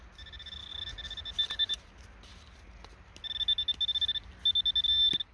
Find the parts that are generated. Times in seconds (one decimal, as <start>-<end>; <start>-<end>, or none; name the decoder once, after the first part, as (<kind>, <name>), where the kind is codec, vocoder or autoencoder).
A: none